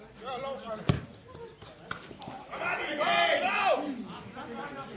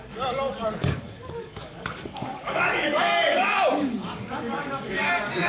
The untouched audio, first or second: first